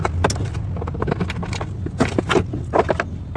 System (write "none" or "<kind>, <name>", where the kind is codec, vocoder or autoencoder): none